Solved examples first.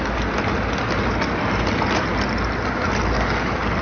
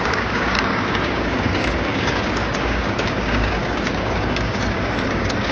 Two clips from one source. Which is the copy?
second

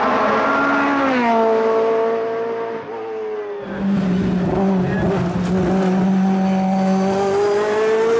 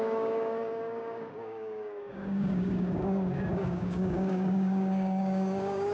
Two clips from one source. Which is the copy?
second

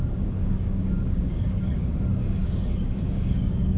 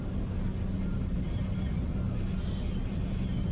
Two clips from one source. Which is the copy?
first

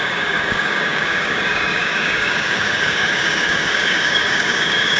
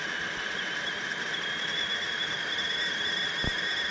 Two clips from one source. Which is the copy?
first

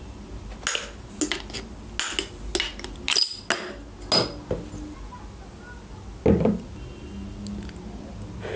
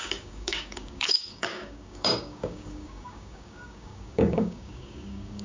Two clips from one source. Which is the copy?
second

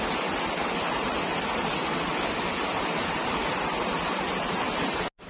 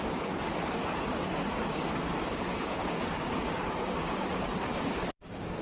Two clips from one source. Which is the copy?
second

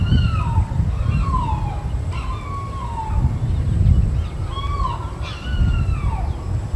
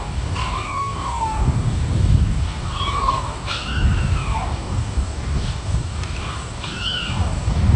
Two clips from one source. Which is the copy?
second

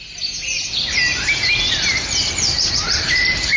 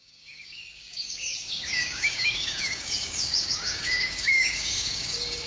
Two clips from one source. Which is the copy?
second